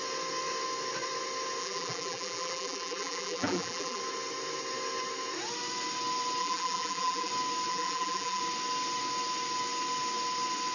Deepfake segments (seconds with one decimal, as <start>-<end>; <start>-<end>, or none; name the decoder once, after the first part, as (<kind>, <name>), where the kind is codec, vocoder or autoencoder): 1.6-4.0 (vocoder, BigVGAN v2); 6.4-7.3; 7.7-8.4